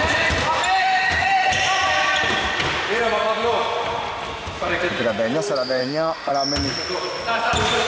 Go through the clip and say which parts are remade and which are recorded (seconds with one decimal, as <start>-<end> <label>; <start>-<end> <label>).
0.0-0.8 recorded; 0.8-1.5 remade; 1.5-5.8 recorded; 5.8-6.3 remade; 6.3-7.9 recorded